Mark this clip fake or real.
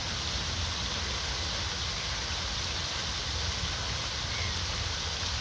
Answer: real